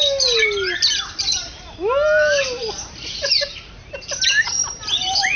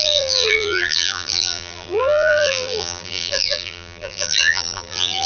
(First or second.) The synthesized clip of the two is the second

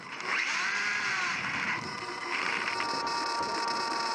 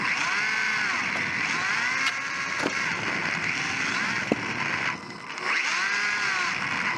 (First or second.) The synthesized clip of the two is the first